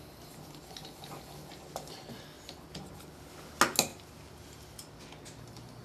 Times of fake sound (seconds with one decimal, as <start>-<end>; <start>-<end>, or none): none